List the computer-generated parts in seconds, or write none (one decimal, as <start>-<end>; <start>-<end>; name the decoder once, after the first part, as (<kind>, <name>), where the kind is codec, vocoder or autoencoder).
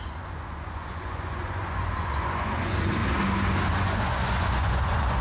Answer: 0.0-3.0 (vocoder, Vocos); 3.7-5.2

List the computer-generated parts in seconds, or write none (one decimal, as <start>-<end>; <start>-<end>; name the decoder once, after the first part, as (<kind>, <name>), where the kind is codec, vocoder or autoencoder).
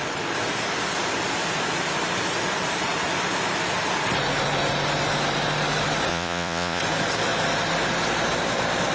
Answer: 6.1-6.8 (vocoder, Vocos)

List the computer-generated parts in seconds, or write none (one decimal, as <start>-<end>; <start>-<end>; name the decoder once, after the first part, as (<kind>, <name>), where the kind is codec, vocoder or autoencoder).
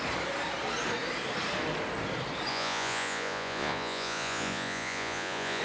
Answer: 2.5-5.6 (vocoder, Vocos)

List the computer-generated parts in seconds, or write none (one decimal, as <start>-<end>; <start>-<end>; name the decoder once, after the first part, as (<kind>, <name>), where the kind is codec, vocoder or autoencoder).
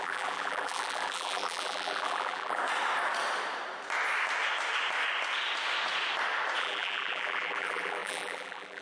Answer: 0.0-2.6 (vocoder, BigVGAN v2); 6.6-8.8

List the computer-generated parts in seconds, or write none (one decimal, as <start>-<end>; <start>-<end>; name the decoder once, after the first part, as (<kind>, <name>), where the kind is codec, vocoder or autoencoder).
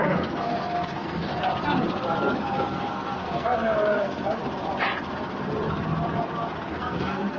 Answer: 0.0-1.3 (codec, SNAC); 2.4-4.4; 6.7-7.4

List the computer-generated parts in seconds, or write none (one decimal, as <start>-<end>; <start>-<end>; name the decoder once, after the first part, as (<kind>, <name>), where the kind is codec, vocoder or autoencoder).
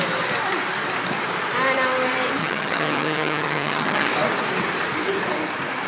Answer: 2.4-4.1 (vocoder, HiFi-GAN)